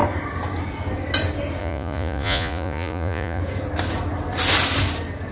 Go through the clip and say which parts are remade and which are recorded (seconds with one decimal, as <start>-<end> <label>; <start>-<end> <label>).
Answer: 0.0-1.6 recorded; 1.6-3.4 remade; 3.4-5.3 recorded